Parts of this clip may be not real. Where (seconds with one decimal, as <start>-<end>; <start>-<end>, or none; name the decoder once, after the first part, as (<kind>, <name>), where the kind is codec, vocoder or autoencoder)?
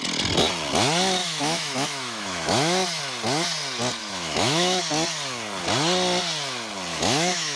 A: 1.2-3.0 (autoencoder, DAC-VAE); 4.0-4.8; 6.9-7.6